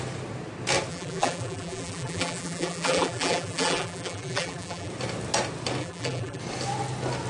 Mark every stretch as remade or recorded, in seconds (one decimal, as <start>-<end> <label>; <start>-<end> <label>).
0.0-0.9 recorded; 0.9-4.9 remade; 4.9-5.8 recorded; 5.8-6.4 remade; 6.4-7.3 recorded